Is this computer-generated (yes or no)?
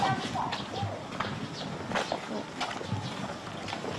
no